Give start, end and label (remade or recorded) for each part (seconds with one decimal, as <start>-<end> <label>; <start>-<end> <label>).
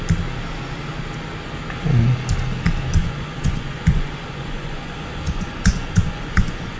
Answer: 0.0-3.0 recorded; 3.0-6.8 remade